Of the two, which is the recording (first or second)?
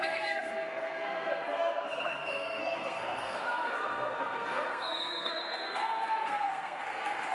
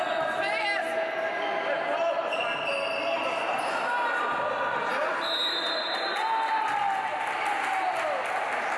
second